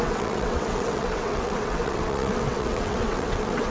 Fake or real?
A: fake